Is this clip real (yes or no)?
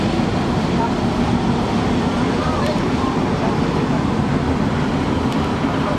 no